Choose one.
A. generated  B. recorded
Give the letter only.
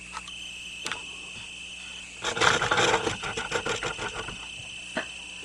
B